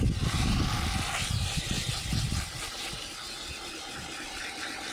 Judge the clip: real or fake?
real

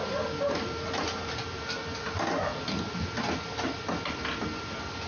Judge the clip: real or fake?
real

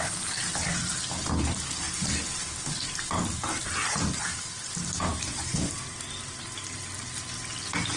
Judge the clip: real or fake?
real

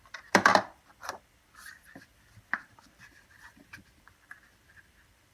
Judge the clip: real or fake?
fake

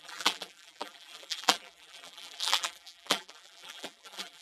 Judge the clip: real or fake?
fake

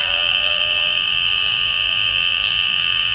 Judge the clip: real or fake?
fake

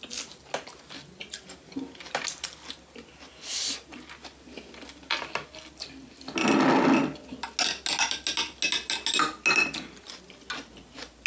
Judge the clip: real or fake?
real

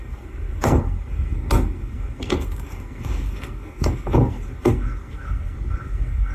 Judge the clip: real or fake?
fake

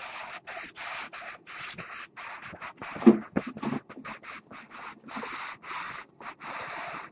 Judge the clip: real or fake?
real